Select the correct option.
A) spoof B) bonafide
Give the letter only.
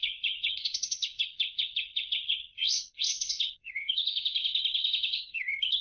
A